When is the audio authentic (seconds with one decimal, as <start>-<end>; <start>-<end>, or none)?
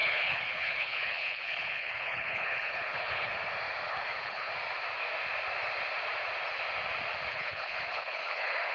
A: 3.3-3.9; 4.5-7.3